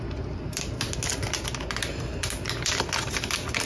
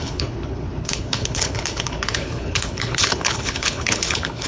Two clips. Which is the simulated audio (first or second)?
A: second